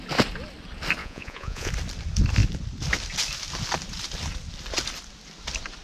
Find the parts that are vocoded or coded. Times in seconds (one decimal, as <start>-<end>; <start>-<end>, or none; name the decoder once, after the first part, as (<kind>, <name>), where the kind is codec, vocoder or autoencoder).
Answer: 1.0-1.7 (vocoder, Vocos)